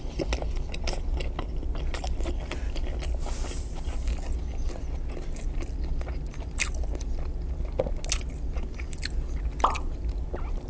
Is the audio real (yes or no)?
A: yes